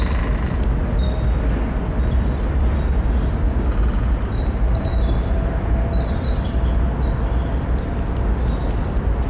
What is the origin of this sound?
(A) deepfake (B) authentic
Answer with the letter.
B